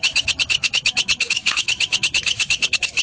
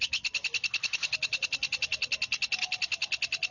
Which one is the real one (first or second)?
second